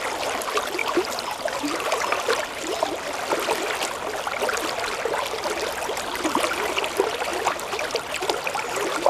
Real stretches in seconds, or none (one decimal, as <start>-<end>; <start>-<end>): 0.0-0.8; 2.8-9.1